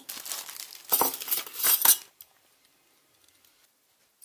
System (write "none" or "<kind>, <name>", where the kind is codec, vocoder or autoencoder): none